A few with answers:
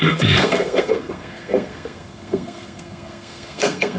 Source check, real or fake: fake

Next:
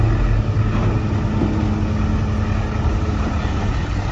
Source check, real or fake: real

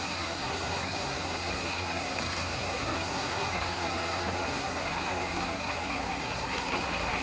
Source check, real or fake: fake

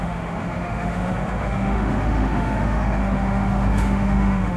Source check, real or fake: fake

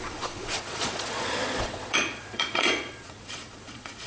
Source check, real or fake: fake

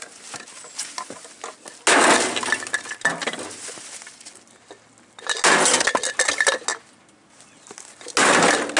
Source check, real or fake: real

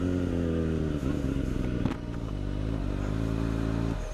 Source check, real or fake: real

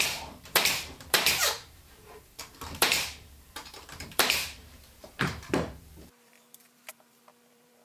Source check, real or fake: fake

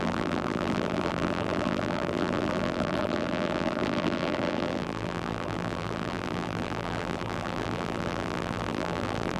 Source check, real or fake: fake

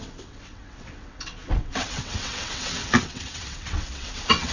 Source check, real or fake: fake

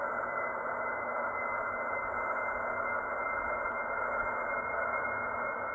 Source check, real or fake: real